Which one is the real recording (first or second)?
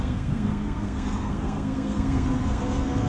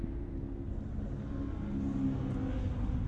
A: second